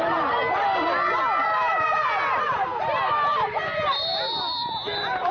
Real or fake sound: real